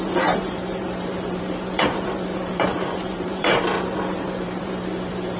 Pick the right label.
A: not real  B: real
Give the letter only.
A